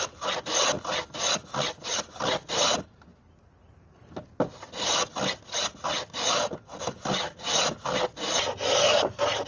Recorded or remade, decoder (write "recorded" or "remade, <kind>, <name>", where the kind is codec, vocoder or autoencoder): recorded